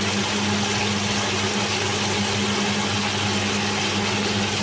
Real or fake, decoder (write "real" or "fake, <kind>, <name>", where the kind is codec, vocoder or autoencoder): real